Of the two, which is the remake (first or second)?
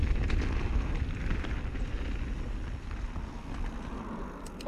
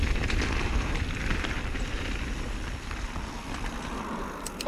second